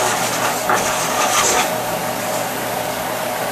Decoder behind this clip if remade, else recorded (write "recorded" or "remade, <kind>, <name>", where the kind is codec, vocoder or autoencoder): remade, codec, DAC